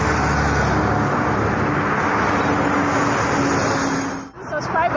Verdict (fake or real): real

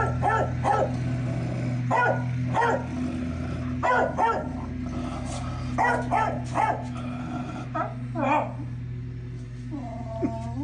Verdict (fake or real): real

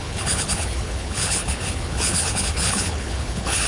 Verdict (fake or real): fake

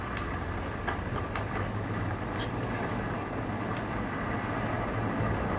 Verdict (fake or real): real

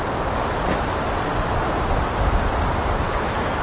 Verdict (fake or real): real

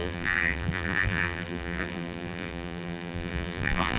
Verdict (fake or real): fake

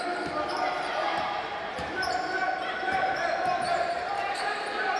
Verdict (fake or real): fake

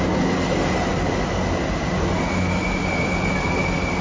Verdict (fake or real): real